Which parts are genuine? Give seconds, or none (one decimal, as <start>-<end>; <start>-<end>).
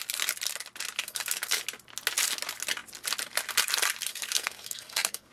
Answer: 0.0-1.0; 1.6-4.1